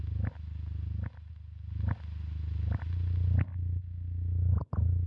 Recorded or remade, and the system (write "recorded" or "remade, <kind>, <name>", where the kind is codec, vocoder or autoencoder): recorded